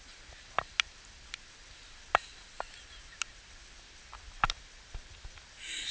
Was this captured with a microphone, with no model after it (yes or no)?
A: yes